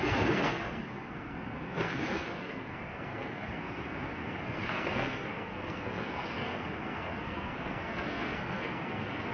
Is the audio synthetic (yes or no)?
yes